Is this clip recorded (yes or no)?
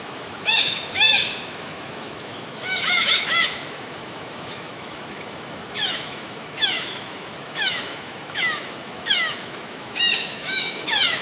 no